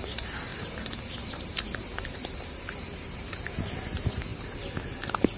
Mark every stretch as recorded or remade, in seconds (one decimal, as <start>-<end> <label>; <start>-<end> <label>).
0.0-4.3 remade; 4.3-5.4 recorded